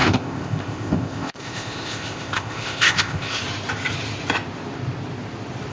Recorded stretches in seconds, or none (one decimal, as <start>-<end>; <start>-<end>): 3.4-5.7